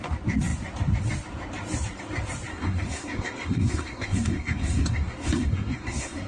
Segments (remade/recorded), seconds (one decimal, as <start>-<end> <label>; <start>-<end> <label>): 0.0-2.5 recorded; 2.5-6.3 remade